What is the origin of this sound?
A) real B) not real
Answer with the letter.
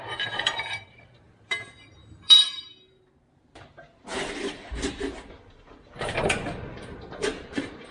B